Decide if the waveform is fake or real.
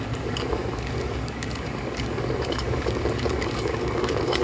fake